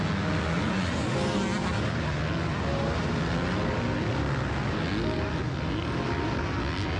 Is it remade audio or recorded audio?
recorded